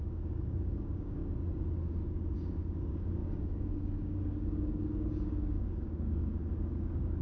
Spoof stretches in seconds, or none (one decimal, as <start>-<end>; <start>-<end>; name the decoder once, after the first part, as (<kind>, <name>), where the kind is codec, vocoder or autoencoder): 0.0-1.2 (codec, DAC); 2.0-7.2